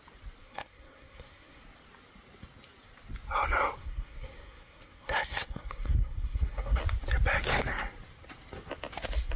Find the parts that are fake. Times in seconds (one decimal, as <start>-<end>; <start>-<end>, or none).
0.4-1.6; 3.8-6.8

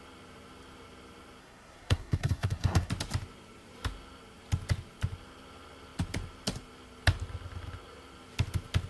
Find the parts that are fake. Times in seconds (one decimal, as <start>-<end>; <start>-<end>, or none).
1.4-2.9

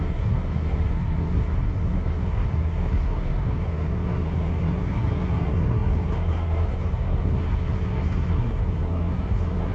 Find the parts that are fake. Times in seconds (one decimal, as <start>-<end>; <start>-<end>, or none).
0.0-9.7

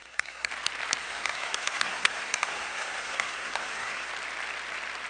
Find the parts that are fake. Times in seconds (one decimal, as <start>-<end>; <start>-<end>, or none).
0.0-0.5; 1.0-4.1

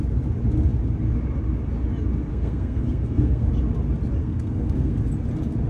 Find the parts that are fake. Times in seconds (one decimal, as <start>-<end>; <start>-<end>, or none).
2.3-3.5; 4.2-5.0

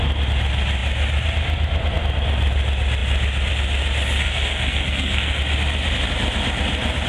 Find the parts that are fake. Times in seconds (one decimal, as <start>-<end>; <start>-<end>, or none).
4.2-5.4

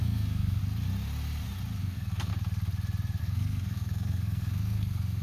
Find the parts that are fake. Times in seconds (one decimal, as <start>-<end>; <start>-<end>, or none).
0.0-0.6; 1.8-2.3; 3.2-5.2